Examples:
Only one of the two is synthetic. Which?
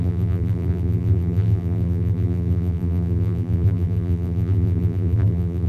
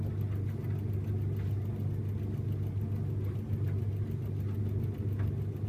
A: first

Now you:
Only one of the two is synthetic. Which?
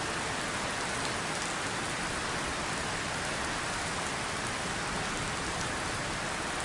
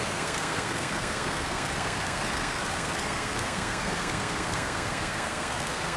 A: second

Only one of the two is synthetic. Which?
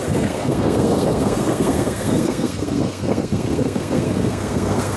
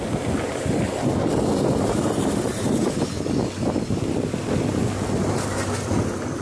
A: first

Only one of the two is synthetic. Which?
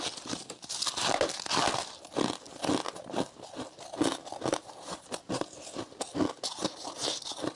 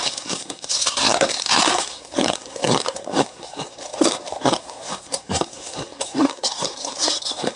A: second